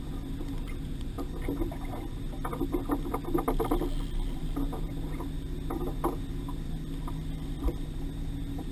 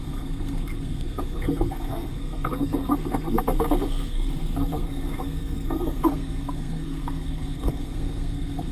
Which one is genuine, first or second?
first